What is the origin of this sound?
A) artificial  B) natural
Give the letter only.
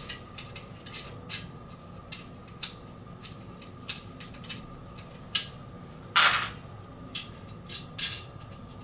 B